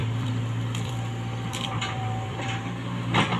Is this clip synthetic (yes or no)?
yes